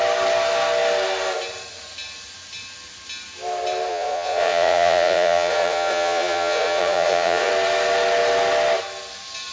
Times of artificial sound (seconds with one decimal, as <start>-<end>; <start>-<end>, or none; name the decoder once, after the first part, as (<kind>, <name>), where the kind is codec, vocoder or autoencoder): 3.9-7.5 (vocoder, Vocos)